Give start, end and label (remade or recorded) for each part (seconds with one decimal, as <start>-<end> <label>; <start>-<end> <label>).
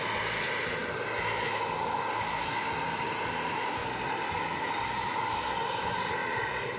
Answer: 0.0-5.6 recorded; 5.6-6.8 remade